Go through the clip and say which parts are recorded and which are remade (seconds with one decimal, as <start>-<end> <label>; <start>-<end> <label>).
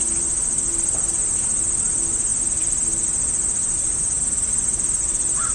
0.0-5.5 recorded